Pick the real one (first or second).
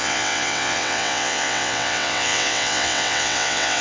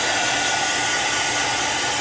second